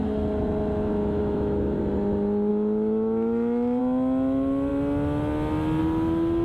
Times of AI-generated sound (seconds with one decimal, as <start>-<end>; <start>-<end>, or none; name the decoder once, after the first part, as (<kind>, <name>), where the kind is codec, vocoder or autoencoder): 1.2-1.8 (autoencoder, DAC-VAE); 2.5-3.8